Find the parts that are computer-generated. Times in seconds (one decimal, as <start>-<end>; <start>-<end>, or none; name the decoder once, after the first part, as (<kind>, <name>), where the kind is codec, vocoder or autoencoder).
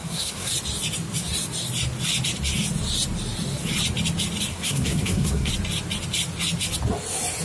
0.0-0.5 (codec, SNAC); 4.5-5.5